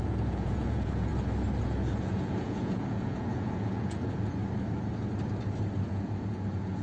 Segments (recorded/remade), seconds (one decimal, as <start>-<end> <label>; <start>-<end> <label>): 0.0-1.1 remade; 1.1-1.6 recorded; 1.6-4.4 remade; 4.4-5.8 recorded; 5.8-6.8 remade